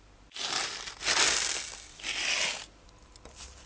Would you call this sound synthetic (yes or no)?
no